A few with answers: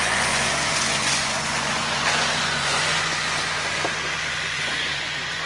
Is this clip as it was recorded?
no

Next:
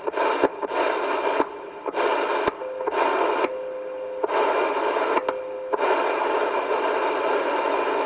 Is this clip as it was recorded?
yes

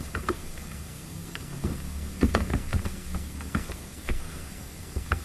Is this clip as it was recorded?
no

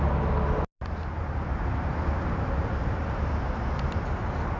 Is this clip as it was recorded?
yes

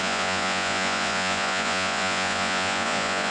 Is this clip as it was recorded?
no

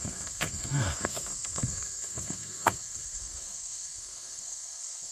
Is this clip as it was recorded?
no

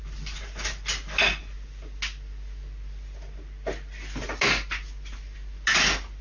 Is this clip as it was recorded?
yes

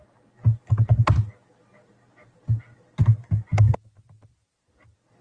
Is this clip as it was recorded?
yes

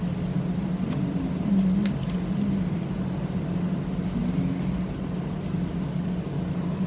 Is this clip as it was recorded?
yes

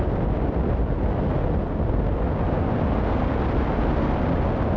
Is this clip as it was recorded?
yes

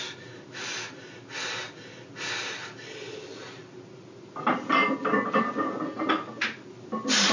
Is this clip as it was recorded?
yes